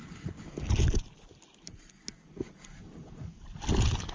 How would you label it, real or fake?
real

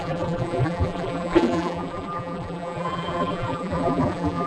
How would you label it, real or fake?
fake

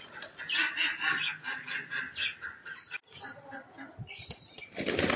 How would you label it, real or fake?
real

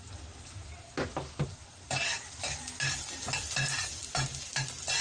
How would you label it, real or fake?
real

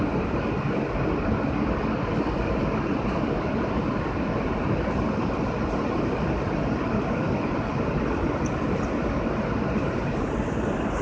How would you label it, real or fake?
real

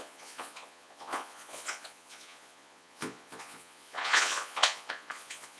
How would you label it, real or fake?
fake